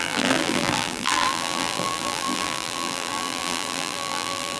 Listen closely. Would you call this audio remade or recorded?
remade